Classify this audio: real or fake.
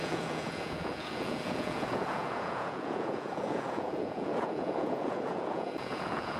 fake